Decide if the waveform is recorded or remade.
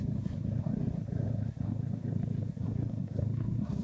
remade